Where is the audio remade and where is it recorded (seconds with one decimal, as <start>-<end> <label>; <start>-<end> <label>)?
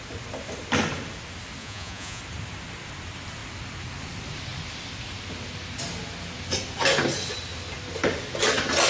0.0-1.6 recorded; 1.6-2.2 remade; 2.2-8.9 recorded